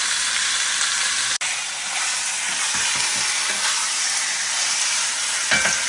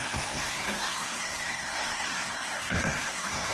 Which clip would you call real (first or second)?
first